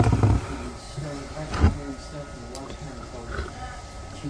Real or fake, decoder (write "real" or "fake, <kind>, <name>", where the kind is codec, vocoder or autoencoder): real